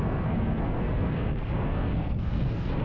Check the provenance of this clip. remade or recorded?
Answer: remade